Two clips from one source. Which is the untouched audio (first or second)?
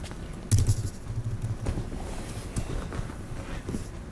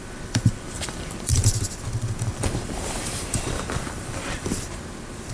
first